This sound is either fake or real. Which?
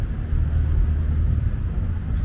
real